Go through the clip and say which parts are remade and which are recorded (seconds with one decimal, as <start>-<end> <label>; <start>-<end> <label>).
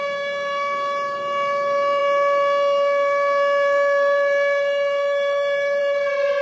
0.0-6.4 recorded